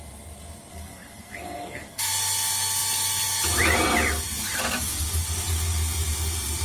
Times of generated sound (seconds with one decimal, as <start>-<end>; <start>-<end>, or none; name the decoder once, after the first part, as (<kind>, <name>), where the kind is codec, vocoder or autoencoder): 0.7-2.1 (codec, SNAC)